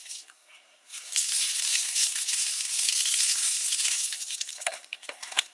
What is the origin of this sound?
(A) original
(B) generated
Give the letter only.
B